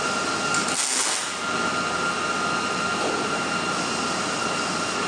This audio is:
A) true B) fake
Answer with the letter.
A